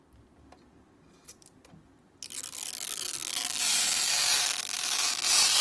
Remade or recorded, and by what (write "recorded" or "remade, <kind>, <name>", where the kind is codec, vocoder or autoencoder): recorded